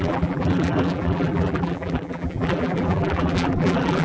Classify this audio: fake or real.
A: fake